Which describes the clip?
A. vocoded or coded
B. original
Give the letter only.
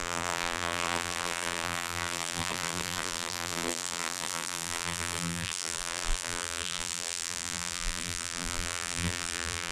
A